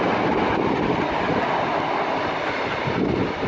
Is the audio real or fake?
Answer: real